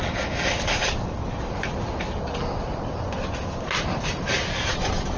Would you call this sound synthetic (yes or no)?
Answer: no